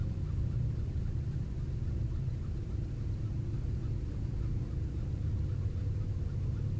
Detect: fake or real real